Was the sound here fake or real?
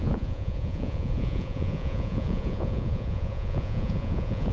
fake